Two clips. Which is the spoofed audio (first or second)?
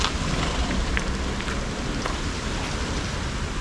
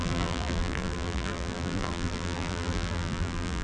second